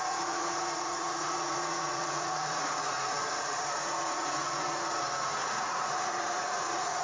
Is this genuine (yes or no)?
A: no